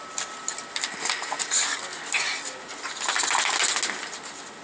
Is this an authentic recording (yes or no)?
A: yes